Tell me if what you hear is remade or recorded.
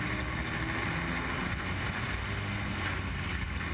recorded